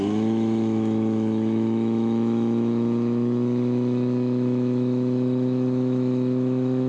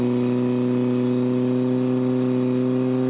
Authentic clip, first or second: second